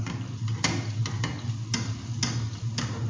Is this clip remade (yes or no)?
no